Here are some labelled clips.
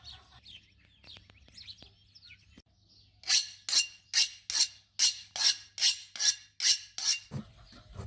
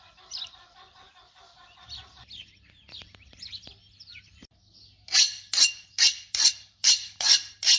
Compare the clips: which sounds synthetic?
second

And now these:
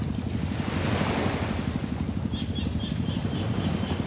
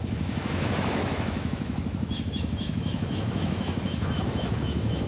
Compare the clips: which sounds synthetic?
second